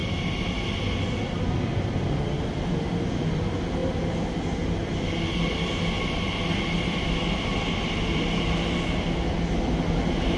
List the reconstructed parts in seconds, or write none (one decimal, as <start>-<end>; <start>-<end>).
0.0-3.4; 7.5-8.2